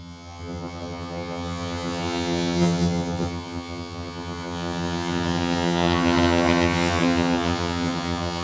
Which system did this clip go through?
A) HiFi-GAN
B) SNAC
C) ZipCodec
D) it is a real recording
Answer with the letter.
A